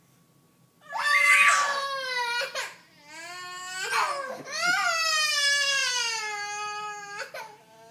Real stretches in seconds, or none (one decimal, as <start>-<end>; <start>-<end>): 0.0-7.9